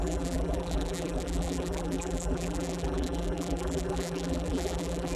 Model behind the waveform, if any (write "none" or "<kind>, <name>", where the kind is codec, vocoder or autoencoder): vocoder, BigVGAN v2